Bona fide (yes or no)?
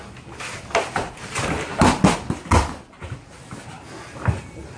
yes